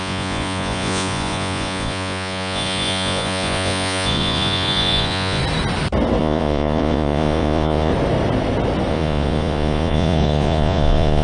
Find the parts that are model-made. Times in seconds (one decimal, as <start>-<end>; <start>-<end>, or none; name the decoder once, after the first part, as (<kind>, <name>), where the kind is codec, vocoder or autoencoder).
0.0-5.4 (vocoder, Vocos); 6.2-7.9; 8.9-11.2